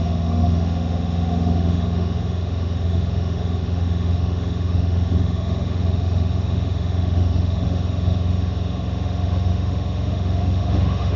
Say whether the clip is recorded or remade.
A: remade